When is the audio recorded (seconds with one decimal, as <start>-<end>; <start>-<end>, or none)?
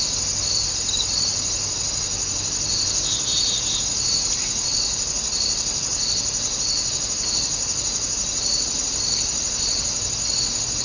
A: 0.0-10.8